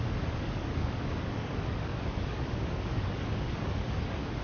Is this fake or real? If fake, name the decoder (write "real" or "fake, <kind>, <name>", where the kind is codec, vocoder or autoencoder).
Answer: fake, codec, DAC